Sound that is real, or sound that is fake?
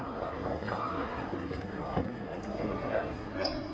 fake